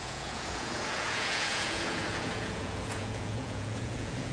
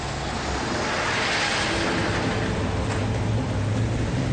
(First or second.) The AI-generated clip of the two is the first